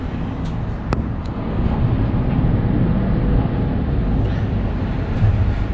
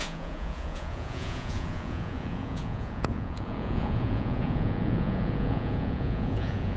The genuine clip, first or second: first